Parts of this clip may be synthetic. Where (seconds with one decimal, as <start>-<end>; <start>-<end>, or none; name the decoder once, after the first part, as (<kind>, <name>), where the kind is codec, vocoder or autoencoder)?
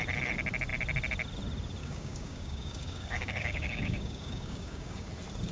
1.8-5.1 (codec, DAC)